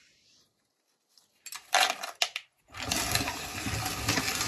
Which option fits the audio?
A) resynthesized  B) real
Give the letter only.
B